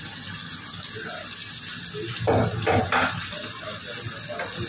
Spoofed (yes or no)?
no